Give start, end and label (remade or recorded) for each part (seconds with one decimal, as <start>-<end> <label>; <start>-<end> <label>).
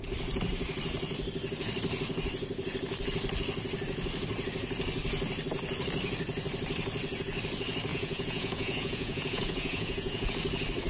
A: 0.0-7.9 recorded; 7.9-10.3 remade; 10.3-10.9 recorded